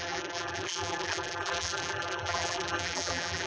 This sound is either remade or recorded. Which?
remade